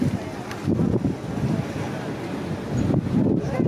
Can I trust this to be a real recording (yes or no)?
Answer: yes